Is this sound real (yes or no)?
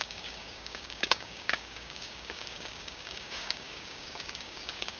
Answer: no